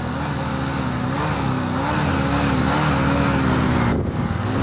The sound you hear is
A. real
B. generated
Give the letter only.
A